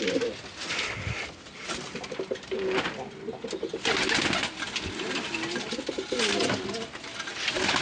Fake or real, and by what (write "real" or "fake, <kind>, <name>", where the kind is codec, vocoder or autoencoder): real